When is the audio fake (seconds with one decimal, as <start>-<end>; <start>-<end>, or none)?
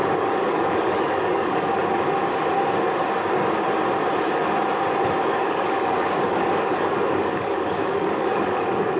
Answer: 0.0-1.8; 5.2-9.0